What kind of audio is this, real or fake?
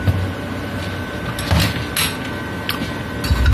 real